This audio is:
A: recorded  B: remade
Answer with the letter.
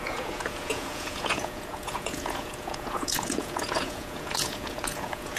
B